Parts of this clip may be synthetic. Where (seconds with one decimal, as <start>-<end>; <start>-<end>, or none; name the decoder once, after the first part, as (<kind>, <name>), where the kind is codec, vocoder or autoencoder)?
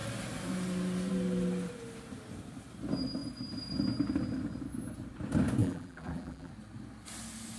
5.6-6.5 (vocoder, BigVGAN v2)